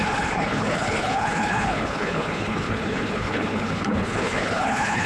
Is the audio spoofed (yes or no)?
yes